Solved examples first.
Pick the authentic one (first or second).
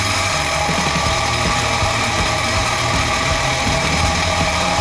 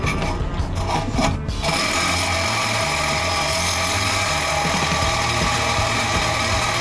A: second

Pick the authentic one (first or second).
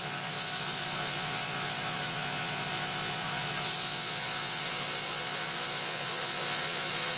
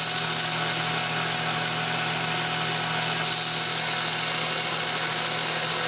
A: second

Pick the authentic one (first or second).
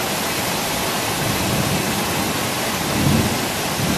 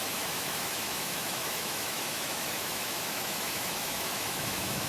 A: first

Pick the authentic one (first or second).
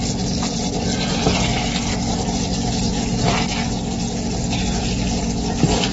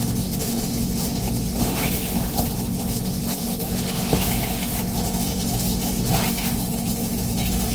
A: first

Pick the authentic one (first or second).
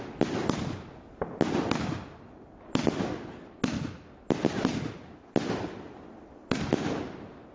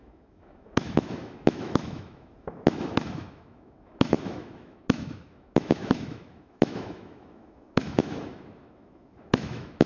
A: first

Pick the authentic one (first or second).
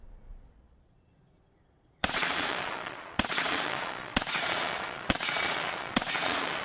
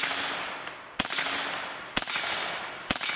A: second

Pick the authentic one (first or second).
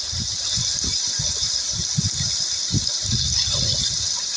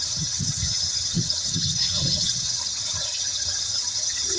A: first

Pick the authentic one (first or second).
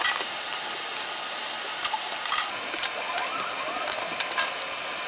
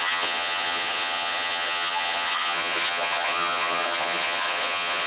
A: first